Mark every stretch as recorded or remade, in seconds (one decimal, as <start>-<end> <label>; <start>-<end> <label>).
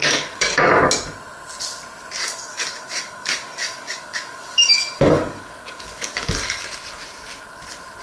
0.0-0.9 remade; 0.9-2.2 recorded; 2.2-6.6 remade; 6.6-8.0 recorded